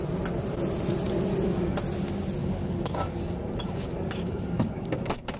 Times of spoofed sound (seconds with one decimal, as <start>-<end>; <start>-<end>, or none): 2.4-5.4